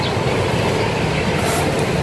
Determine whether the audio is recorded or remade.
recorded